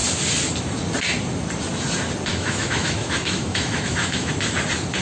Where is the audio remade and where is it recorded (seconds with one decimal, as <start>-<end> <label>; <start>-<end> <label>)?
0.0-2.3 recorded; 2.3-4.3 remade; 4.3-5.0 recorded